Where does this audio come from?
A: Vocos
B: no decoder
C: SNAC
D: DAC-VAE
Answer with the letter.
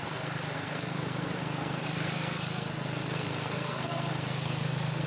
C